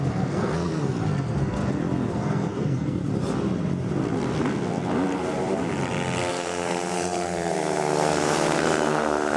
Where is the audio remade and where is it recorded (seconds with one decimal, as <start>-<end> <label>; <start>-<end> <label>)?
0.0-1.6 remade; 1.6-2.1 recorded; 2.1-3.0 remade; 3.0-6.3 recorded; 6.3-9.4 remade